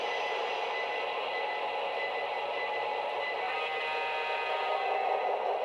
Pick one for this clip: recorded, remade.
recorded